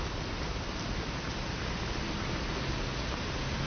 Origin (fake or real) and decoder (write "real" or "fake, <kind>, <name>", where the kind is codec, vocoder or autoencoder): real